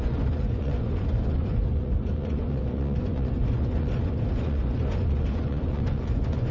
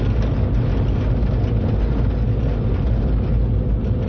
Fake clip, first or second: first